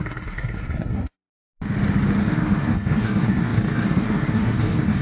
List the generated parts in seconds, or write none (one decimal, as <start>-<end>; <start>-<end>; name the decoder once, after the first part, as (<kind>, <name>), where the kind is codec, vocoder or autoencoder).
0.0-1.3 (codec, SNAC); 2.2-5.0